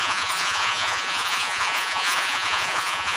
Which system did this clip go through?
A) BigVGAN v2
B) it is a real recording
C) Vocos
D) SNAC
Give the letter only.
C